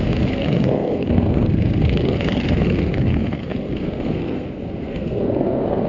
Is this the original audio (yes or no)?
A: no